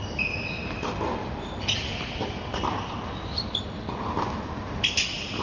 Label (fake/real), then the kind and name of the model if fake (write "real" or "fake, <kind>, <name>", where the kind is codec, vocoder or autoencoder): real